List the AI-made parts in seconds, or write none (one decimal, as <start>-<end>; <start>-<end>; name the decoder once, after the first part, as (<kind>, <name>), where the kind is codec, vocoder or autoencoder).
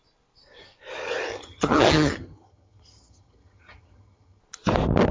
1.3-4.4 (vocoder, HiFi-GAN)